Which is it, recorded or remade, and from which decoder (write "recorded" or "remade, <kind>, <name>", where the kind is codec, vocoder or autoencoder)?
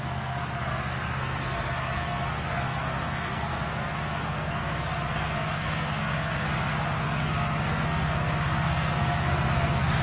remade, codec, SNAC